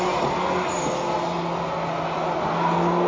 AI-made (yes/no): no